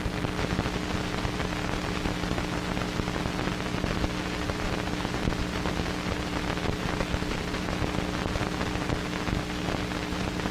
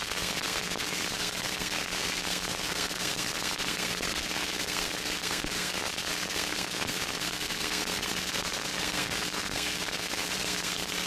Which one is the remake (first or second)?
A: second